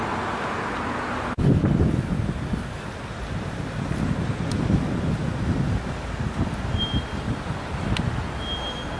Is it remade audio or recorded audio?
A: recorded